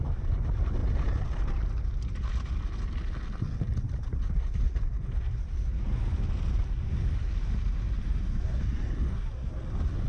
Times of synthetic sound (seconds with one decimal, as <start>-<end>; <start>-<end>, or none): none